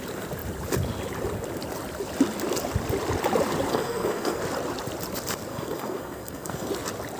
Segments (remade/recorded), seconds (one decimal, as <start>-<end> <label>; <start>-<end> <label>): 0.0-3.7 recorded; 3.7-4.4 remade; 4.4-5.5 recorded; 5.5-6.7 remade; 6.7-7.2 recorded